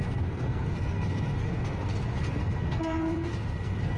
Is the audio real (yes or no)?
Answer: no